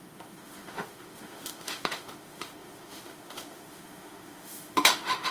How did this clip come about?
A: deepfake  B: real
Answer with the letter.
A